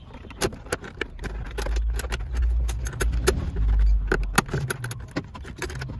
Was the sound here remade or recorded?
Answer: recorded